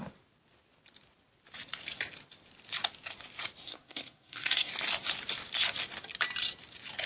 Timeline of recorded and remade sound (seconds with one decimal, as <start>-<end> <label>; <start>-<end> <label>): 0.0-3.6 recorded; 3.6-4.7 remade; 4.7-7.1 recorded